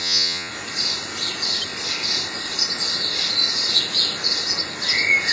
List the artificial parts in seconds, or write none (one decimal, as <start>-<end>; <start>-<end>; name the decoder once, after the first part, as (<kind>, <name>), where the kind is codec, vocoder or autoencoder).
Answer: 0.0-0.5 (vocoder, Vocos)

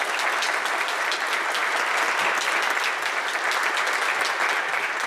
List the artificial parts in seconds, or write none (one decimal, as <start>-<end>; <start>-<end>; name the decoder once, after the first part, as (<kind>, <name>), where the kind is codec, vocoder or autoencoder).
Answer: none